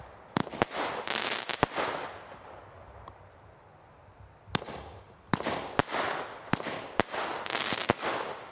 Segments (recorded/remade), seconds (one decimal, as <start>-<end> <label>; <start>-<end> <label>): 0.0-8.5 recorded